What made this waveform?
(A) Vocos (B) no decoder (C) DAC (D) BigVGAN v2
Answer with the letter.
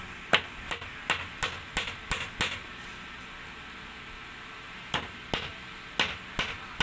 B